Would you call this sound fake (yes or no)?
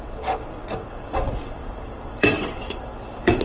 yes